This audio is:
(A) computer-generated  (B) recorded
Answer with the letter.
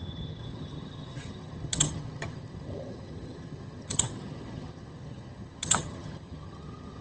A